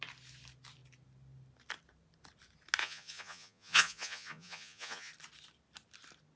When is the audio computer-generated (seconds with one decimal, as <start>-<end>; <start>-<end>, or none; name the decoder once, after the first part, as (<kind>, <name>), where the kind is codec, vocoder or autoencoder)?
2.8-5.1 (vocoder, Vocos)